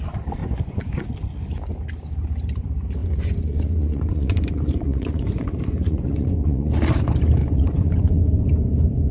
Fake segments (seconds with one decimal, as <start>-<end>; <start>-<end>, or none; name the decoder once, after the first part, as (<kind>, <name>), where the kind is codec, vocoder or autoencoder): 0.4-1.1 (vocoder, Vocos); 3.0-6.7; 7.4-8.2

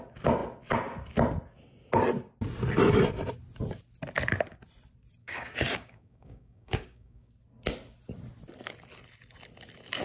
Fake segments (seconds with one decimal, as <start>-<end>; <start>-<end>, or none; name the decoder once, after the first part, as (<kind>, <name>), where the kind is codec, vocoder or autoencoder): 5.2-7.3 (codec, DAC)